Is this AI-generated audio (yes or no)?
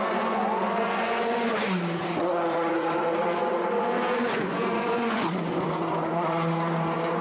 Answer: yes